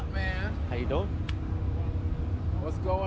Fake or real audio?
real